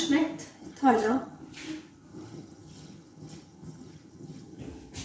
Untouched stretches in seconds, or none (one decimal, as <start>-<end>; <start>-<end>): 0.0-0.6; 1.4-2.1; 4.6-5.0